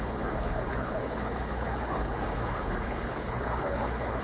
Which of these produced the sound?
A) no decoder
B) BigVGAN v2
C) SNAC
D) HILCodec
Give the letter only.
D